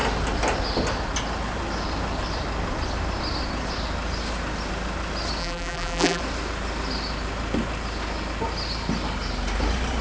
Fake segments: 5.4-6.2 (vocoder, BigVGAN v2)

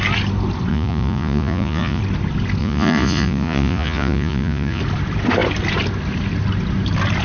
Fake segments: 0.7-2.0 (vocoder, Vocos); 2.6-4.8

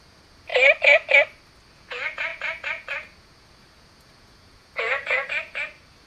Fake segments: 0.0-0.5 (vocoder, Vocos); 1.7-6.1

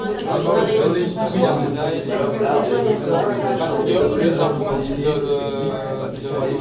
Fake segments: none

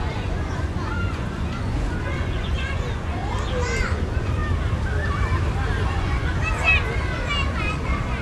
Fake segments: 0.0-3.2 (vocoder, Vocos); 3.8-4.4; 5.8-6.4; 7.5-8.2

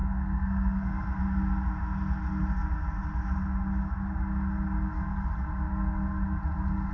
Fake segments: 0.0-1.2 (codec, SNAC)

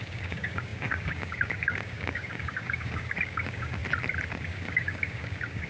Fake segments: 0.0-3.8 (codec, DAC); 4.3-5.7